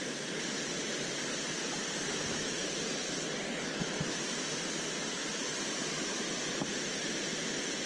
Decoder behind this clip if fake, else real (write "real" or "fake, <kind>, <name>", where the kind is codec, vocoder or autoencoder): real